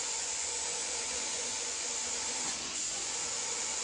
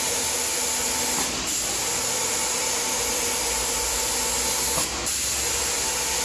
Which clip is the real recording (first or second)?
second